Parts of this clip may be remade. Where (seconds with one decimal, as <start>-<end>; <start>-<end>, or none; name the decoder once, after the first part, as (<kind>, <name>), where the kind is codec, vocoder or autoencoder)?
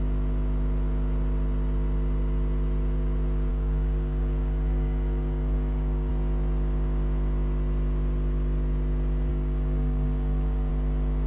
3.5-6.1 (codec, DAC); 9.3-10.7